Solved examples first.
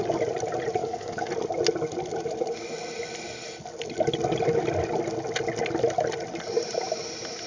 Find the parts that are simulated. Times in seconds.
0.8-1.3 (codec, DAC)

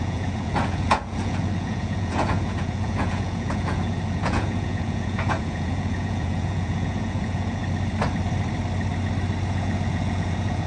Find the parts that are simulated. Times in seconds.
0.0-7.6 (vocoder, Vocos); 9.5-10.7

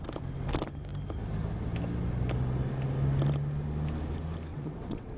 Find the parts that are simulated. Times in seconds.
4.5-5.2 (vocoder, WaveNeXt)

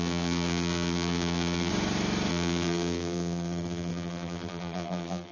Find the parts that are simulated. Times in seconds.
0.0-1.7 (vocoder, BigVGAN v2); 2.3-5.3

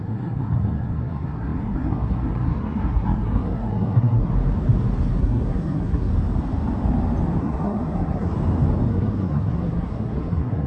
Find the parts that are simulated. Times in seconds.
0.0-4.3 (codec, SNAC); 5.2-6.1; 7.4-8.3; 8.9-10.7

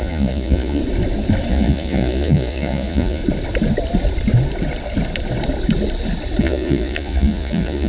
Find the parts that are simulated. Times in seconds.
0.0-0.8 (vocoder, Vocos); 1.5-3.2; 6.4-7.9

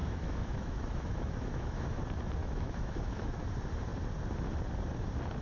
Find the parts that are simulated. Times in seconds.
0.0-2.0 (autoencoder, DAC-VAE); 2.4-3.4

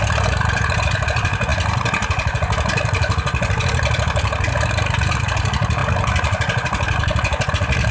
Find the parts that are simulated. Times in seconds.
none